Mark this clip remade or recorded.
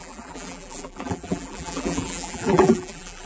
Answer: remade